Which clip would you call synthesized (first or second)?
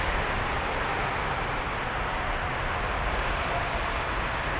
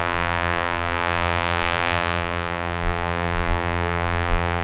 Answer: second